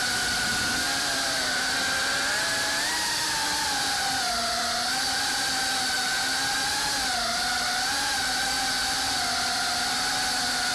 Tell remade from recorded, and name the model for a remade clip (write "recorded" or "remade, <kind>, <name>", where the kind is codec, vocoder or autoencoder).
remade, vocoder, BigVGAN v2